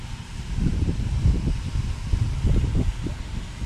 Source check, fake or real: real